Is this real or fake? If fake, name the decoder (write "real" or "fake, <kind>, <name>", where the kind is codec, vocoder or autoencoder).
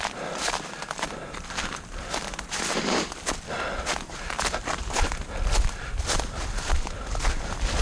real